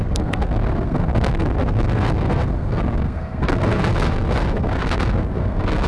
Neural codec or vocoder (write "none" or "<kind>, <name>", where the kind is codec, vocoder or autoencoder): codec, SNAC